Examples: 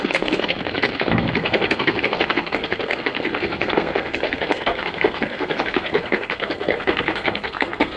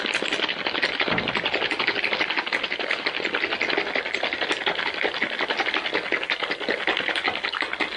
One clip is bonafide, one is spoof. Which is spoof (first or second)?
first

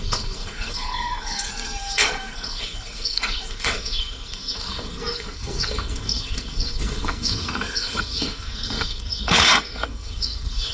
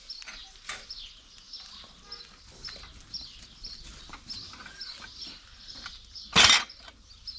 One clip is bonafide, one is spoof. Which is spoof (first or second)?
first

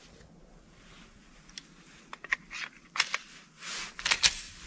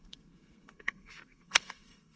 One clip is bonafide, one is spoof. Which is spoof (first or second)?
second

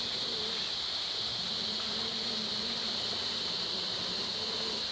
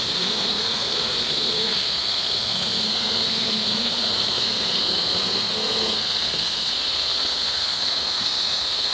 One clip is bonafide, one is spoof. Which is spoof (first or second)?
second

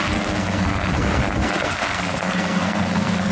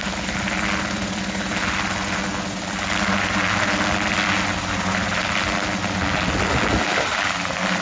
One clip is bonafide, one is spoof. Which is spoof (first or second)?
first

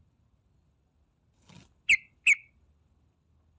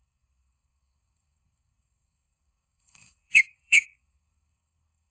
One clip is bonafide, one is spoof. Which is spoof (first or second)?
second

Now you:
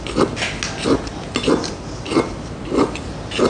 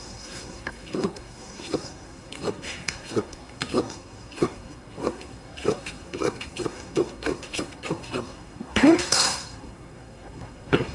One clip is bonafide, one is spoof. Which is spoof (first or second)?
second